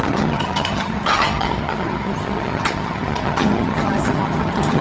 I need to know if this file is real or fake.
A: fake